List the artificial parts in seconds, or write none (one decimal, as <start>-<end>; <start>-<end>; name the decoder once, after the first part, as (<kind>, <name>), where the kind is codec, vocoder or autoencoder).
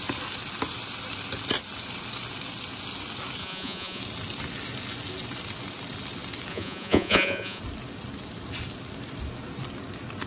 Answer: 3.4-4.0 (vocoder, Vocos); 6.5-7.6